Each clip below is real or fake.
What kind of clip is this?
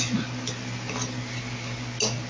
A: real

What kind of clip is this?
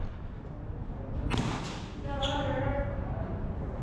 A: real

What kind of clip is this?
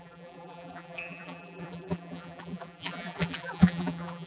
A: fake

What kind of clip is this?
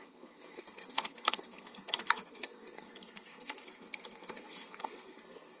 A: fake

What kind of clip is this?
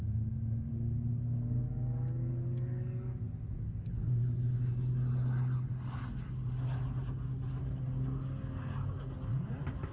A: real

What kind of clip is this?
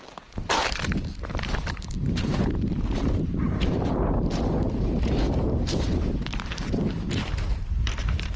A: fake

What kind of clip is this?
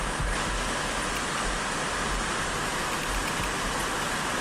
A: real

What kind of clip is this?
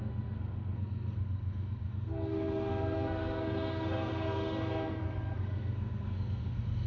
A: fake